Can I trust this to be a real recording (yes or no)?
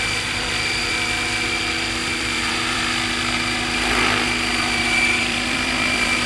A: no